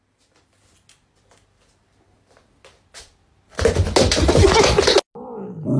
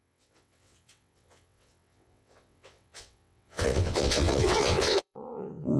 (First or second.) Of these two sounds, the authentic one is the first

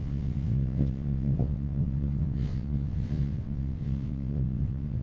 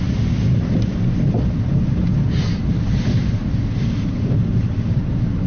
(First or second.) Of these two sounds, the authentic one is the second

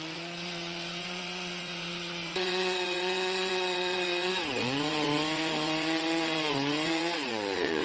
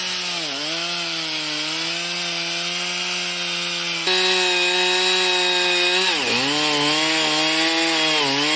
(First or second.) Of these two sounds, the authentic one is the second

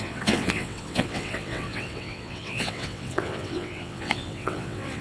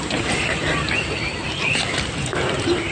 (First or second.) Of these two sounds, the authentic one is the second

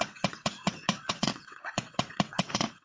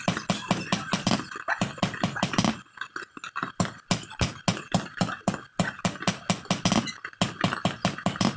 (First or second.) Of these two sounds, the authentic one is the second